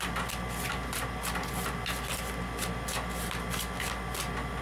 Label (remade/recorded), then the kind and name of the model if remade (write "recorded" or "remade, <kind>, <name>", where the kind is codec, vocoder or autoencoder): recorded